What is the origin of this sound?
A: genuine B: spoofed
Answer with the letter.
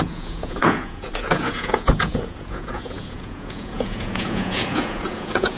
B